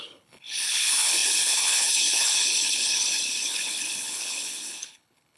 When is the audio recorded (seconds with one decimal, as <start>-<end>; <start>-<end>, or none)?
none

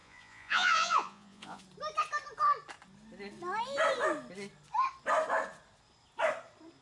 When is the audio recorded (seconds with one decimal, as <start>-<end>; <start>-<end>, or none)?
1.6-6.8

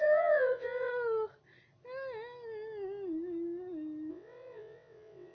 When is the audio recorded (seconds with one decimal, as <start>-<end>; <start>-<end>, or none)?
0.9-4.1

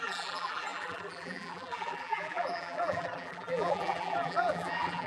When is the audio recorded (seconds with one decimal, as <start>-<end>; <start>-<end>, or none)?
none

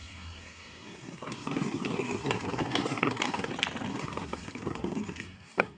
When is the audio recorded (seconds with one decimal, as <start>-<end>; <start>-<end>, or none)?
3.5-3.9

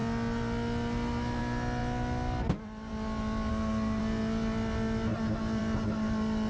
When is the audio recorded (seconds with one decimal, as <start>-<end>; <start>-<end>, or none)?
0.0-3.5; 4.0-6.5

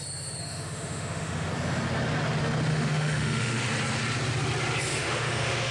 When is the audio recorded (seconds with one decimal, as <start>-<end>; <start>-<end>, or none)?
0.0-0.4; 1.5-2.7; 3.7-4.9

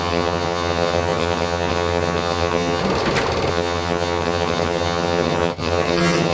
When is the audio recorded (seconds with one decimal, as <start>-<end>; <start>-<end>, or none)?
2.8-3.5